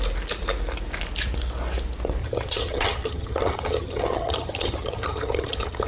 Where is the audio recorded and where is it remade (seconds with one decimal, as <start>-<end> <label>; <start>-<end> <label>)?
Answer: 0.0-2.2 recorded; 2.2-5.9 remade